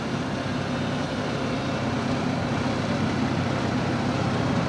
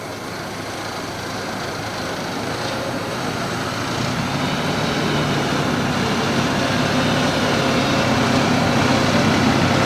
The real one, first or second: second